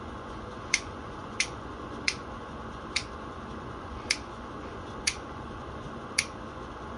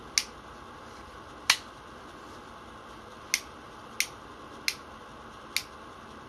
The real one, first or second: second